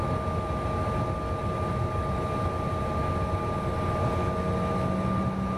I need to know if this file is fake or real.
real